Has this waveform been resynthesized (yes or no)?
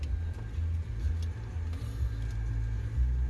no